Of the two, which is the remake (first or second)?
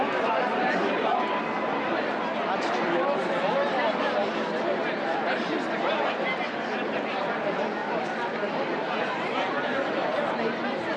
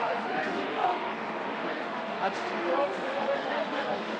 second